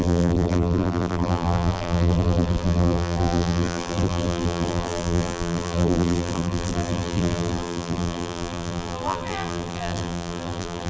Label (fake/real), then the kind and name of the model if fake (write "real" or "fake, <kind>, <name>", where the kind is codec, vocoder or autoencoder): fake, vocoder, BigVGAN v2